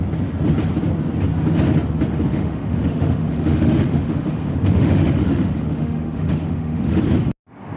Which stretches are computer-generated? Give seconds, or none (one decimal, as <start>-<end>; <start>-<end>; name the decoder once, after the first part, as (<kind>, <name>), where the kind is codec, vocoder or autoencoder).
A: 2.3-7.0 (autoencoder, DAC-VAE)